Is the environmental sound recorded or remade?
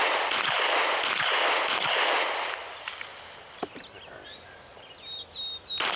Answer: recorded